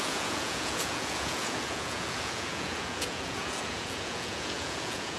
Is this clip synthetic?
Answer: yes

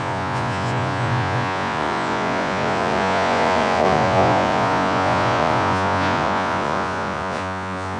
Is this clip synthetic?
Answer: yes